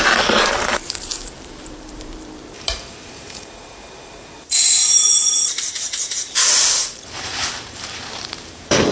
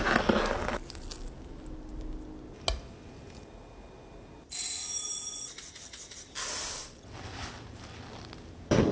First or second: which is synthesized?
first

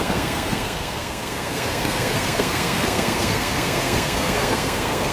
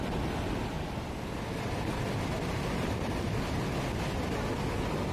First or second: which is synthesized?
first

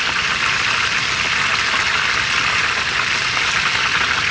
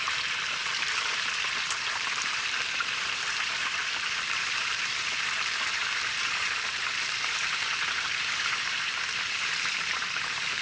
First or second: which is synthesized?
second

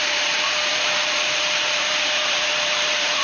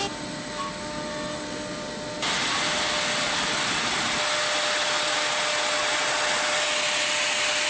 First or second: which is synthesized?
first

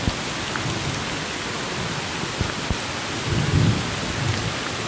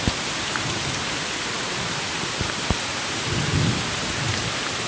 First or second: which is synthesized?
second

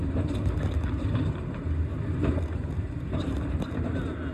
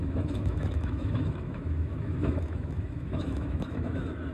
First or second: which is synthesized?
second